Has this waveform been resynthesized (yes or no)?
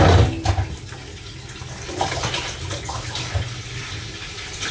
no